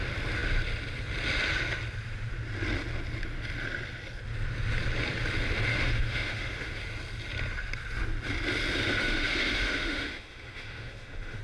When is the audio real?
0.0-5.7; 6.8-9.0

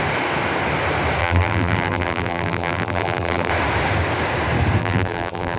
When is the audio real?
0.0-1.2; 3.5-4.8

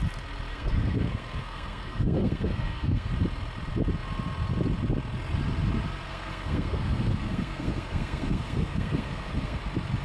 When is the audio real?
0.0-0.5; 3.1-6.1; 9.6-10.0